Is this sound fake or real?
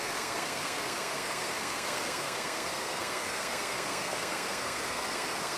fake